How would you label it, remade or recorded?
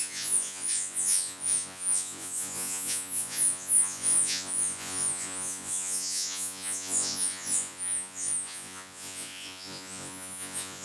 remade